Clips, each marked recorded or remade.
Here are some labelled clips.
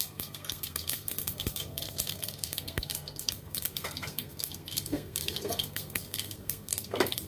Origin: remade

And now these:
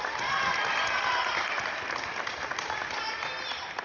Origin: recorded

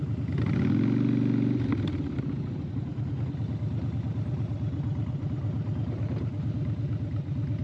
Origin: recorded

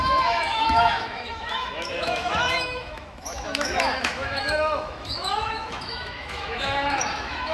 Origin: remade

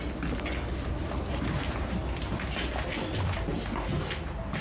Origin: recorded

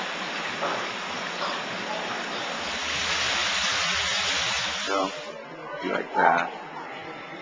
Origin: recorded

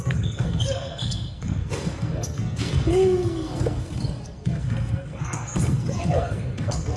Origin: remade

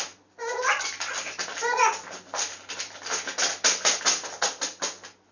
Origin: recorded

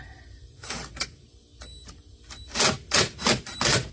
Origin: recorded